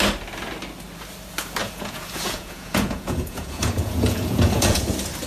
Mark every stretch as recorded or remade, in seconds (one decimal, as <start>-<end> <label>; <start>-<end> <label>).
0.0-1.6 recorded; 1.6-4.8 remade; 4.8-5.3 recorded